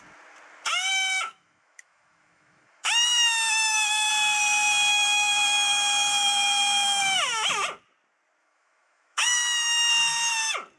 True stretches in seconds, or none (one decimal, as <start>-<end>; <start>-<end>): 0.0-0.9; 4.1-4.9; 7.0-8.4; 9.9-10.8